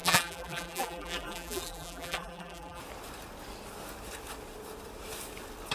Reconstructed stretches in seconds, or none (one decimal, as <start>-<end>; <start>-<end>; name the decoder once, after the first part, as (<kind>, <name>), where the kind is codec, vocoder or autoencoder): 0.0-2.8 (vocoder, BigVGAN v2)